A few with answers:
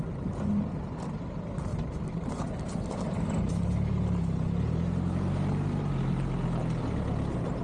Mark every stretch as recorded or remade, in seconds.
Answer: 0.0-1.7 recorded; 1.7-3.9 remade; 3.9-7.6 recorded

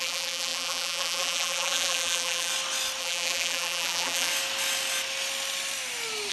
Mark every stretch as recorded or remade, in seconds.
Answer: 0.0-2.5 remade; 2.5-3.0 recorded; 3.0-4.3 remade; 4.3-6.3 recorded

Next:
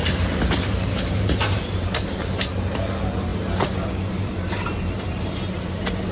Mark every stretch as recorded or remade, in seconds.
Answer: 0.0-6.1 remade

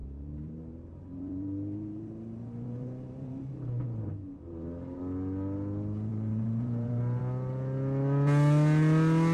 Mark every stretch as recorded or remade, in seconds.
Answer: 0.0-5.0 remade; 5.0-6.1 recorded; 6.1-7.2 remade; 7.2-9.3 recorded

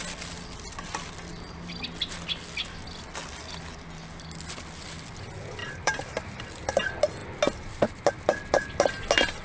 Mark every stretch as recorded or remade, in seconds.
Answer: 0.0-1.3 recorded; 1.3-1.8 remade; 1.8-5.6 recorded; 5.6-6.4 remade; 6.4-9.4 recorded

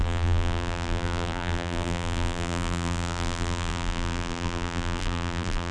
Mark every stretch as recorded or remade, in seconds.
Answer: 0.0-5.7 remade